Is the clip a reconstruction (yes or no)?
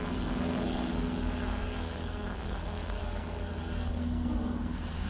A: yes